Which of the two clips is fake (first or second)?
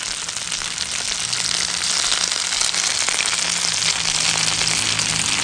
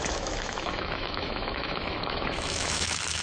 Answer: second